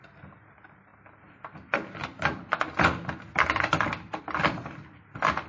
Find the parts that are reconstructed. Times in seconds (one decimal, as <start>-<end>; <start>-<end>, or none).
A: none